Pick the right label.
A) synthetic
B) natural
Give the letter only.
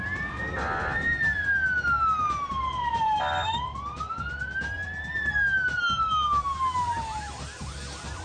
B